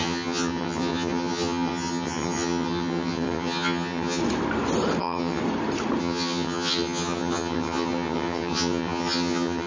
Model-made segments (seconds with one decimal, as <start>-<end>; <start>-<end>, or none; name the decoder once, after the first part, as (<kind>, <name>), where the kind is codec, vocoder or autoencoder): 0.0-4.2 (vocoder, HiFi-GAN); 5.0-5.4; 6.0-9.7